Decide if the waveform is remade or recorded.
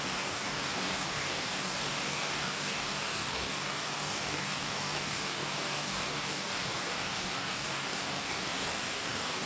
remade